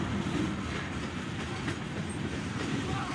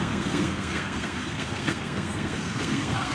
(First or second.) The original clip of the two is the first